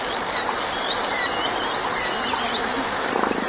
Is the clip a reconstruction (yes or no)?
no